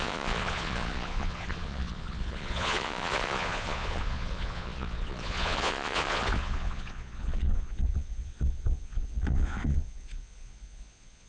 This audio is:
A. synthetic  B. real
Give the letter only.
A